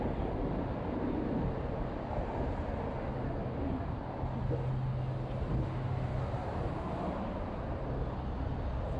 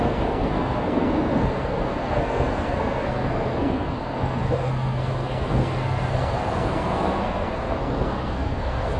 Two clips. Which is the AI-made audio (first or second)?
second